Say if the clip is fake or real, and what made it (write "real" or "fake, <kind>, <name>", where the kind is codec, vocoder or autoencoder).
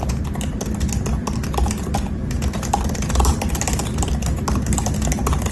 real